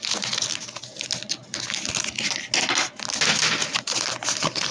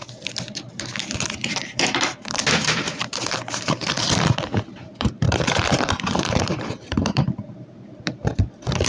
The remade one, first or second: second